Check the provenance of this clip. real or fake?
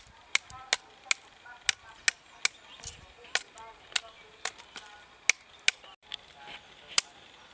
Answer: real